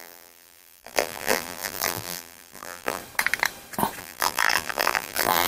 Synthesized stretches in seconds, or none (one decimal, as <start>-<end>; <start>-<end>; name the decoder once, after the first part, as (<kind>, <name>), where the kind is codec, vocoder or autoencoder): 0.0-3.0 (vocoder, BigVGAN v2); 4.0-5.5